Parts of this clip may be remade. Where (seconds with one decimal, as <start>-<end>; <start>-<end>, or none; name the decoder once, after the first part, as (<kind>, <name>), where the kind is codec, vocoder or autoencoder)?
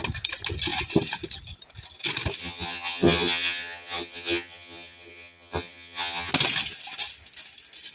2.4-6.3 (vocoder, HiFi-GAN)